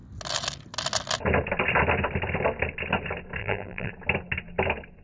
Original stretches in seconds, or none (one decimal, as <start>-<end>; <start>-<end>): 0.0-3.4; 3.9-5.0